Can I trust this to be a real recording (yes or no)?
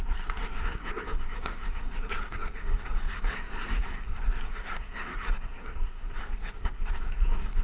no